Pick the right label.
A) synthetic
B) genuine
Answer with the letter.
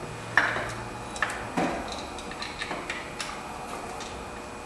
B